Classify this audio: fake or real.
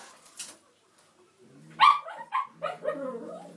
real